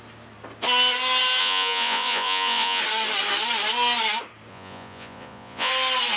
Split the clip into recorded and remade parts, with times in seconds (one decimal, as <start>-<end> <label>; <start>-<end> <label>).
0.0-1.4 recorded; 1.4-2.8 remade; 2.8-4.5 recorded; 4.5-5.7 remade; 5.7-6.2 recorded